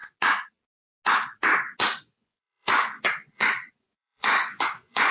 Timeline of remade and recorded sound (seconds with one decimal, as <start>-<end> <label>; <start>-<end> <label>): 0.0-2.0 recorded; 2.0-5.1 remade